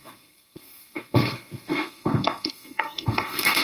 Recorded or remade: remade